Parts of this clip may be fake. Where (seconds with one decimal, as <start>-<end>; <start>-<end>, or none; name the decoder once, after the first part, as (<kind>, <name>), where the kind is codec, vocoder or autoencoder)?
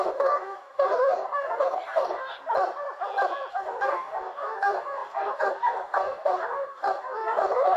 0.0-2.4 (codec, DAC); 3.5-7.8